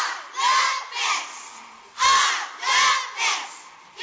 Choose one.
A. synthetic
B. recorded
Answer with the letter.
B